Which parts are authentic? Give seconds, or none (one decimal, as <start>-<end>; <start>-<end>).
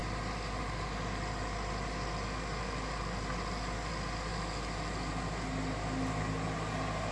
0.0-7.1